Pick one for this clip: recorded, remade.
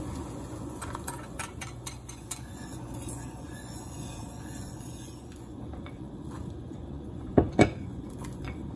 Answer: remade